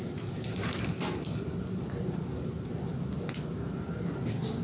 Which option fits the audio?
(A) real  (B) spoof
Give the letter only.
A